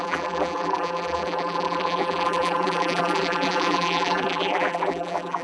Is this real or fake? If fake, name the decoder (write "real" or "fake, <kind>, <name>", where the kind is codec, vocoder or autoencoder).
fake, vocoder, BigVGAN v2